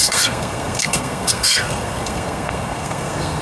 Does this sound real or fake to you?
fake